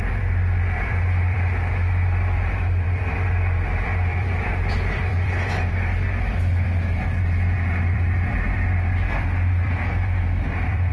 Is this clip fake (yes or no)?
yes